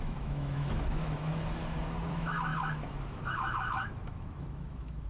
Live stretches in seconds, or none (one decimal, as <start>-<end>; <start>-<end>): 1.3-2.1